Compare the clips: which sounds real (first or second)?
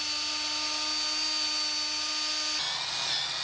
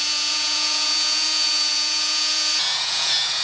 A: first